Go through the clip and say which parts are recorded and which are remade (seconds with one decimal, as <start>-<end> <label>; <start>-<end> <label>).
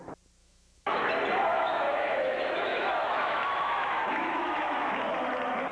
0.0-0.4 recorded; 0.4-1.0 remade; 1.0-1.5 recorded; 1.5-4.9 remade; 4.9-5.7 recorded